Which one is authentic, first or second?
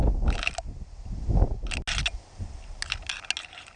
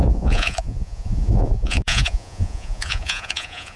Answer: first